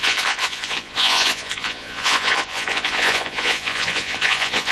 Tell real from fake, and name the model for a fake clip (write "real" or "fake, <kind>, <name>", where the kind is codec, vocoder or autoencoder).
fake, vocoder, Vocos